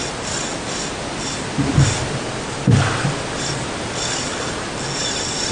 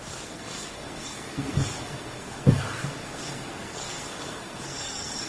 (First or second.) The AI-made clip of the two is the second